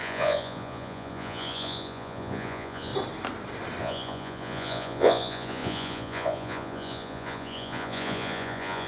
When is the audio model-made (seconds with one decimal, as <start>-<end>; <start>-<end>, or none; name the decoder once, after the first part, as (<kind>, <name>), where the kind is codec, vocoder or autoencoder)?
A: 0.0-2.9 (vocoder, Vocos); 3.8-8.9